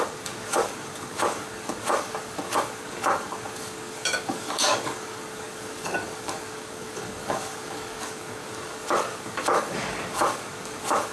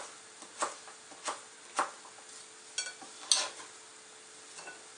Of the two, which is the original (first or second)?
second